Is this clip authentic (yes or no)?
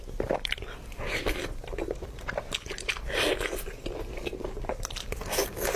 no